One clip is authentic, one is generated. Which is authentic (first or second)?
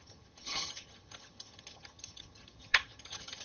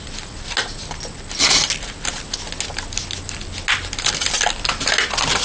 second